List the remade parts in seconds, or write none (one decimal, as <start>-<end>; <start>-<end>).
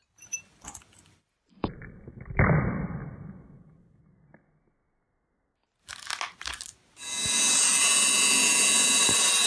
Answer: 0.0-4.0; 9.0-9.5